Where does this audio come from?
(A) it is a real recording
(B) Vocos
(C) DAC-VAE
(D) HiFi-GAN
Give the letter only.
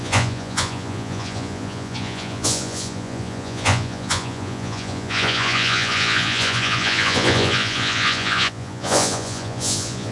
B